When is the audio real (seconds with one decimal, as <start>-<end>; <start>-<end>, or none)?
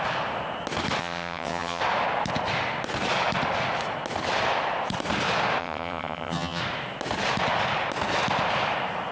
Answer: 0.0-1.0; 1.8-5.6; 6.6-9.1